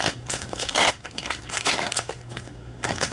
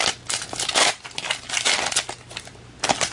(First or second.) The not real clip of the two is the first